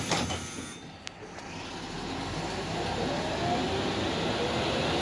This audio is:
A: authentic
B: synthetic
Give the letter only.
A